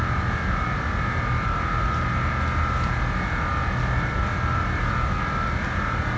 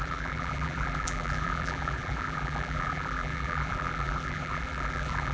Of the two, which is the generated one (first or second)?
second